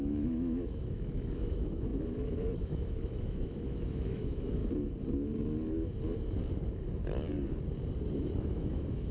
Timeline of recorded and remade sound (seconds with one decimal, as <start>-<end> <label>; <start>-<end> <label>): 0.0-4.6 remade; 4.6-8.2 recorded; 8.2-9.1 remade